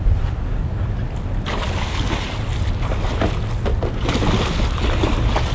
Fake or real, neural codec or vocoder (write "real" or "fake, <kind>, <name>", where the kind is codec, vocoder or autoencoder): real